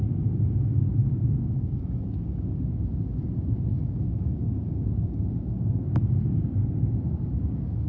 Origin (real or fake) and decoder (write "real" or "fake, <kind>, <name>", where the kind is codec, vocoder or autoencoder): fake, codec, DAC